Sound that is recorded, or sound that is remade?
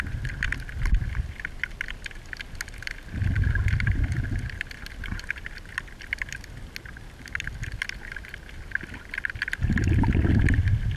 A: recorded